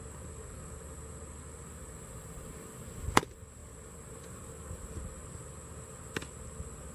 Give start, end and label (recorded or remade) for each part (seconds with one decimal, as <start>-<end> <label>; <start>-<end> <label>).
0.0-3.6 recorded; 3.6-4.5 remade; 4.5-6.9 recorded